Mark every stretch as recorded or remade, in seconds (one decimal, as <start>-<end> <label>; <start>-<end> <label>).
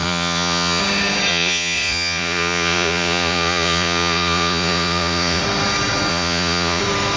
0.0-0.8 remade; 0.8-1.3 recorded; 1.3-5.4 remade; 5.4-6.1 recorded; 6.1-6.8 remade; 6.8-7.2 recorded